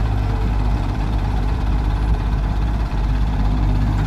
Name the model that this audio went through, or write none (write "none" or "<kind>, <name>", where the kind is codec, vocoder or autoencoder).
vocoder, BigVGAN v2